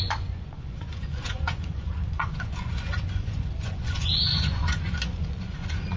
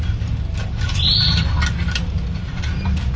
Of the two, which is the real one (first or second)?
second